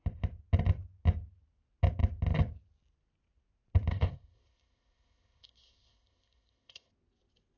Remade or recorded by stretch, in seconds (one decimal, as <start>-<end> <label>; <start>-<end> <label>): 0.0-3.9 recorded; 3.9-6.9 remade; 6.9-7.6 recorded